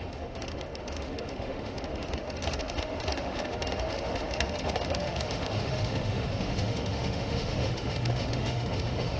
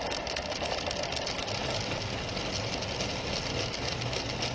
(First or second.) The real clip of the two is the second